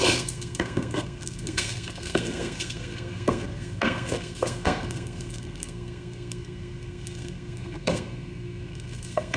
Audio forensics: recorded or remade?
remade